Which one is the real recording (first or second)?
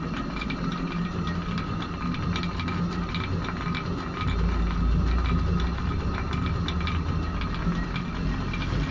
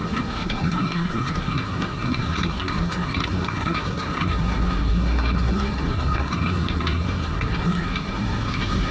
first